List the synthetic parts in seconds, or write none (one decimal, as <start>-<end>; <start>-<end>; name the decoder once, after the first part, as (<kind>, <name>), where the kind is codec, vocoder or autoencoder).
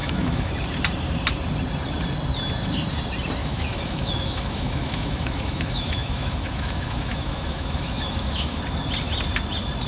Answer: 0.0-0.5 (autoencoder, DAC-VAE); 3.4-8.6